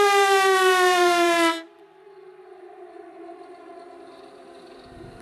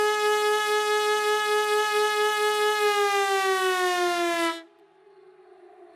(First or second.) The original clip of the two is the second